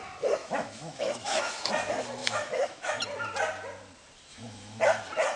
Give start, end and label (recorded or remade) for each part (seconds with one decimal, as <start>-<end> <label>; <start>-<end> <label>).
0.0-0.4 recorded; 0.4-1.7 remade; 1.7-2.2 recorded; 2.2-3.0 remade; 3.0-4.3 recorded; 4.3-4.8 remade; 4.8-5.4 recorded